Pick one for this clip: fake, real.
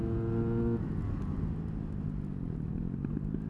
real